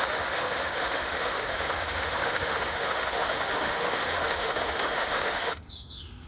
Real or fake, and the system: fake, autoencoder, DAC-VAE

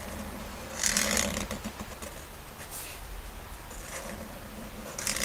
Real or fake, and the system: fake, vocoder, BigVGAN v2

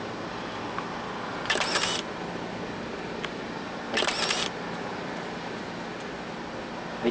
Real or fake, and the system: real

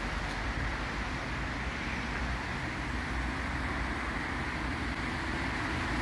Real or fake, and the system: real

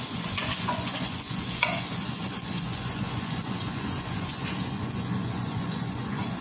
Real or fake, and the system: fake, vocoder, Vocos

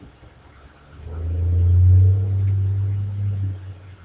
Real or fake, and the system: real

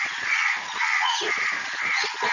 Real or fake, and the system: fake, vocoder, Vocos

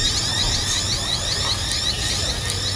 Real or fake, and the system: real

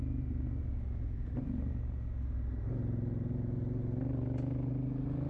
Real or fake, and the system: real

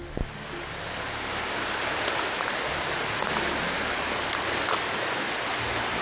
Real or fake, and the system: real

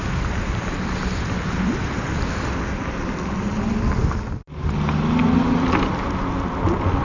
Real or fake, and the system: real